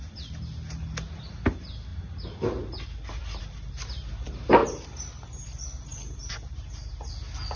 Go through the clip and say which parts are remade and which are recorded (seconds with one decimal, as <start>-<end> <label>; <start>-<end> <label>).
0.0-4.6 recorded; 4.6-7.1 remade; 7.1-7.6 recorded